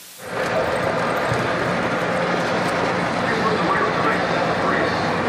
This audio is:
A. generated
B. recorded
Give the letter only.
B